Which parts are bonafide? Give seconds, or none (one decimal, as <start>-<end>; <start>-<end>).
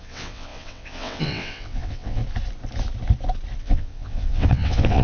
2.2-3.6